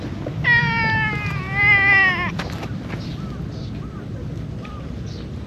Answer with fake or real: real